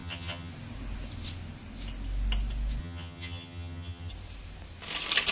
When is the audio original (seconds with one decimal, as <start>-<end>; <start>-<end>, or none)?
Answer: 0.5-2.8; 4.1-5.3